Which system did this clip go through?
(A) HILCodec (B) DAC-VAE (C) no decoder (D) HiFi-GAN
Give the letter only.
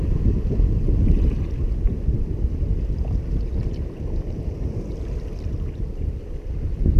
C